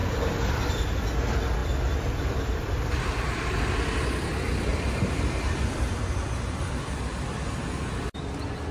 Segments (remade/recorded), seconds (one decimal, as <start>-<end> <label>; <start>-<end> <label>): 0.0-1.6 recorded; 1.6-3.6 remade; 3.6-4.7 recorded; 4.7-7.6 remade; 7.6-8.7 recorded